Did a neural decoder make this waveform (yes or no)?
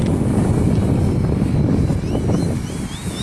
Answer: no